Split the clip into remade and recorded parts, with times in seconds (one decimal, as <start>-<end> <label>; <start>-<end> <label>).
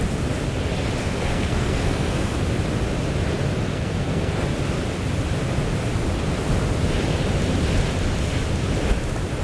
0.0-1.0 recorded; 1.0-2.4 remade; 2.4-3.7 recorded; 3.7-4.3 remade; 4.3-9.4 recorded